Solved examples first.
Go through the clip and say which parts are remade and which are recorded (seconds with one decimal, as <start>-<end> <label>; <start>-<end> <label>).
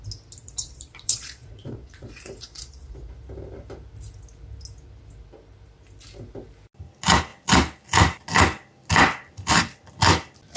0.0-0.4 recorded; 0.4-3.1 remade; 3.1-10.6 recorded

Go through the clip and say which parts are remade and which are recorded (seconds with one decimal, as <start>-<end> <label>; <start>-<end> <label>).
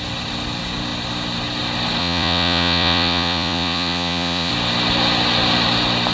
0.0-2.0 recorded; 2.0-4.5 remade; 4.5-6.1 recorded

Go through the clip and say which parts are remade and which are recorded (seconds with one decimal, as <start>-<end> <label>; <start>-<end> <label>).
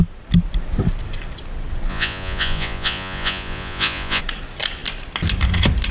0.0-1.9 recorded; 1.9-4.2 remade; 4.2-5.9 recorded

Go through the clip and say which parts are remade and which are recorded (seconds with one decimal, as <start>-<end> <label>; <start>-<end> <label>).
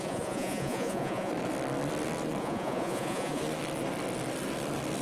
0.0-1.3 remade; 1.3-2.4 recorded; 2.4-3.4 remade; 3.4-5.0 recorded